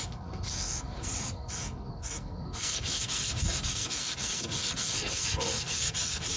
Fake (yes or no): yes